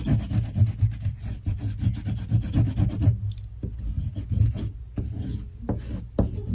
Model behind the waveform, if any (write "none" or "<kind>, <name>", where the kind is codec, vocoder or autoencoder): none